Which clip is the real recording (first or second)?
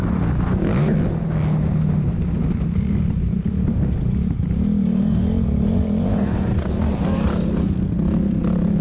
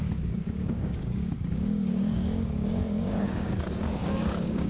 first